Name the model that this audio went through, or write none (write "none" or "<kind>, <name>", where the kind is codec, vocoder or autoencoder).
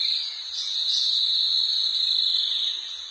none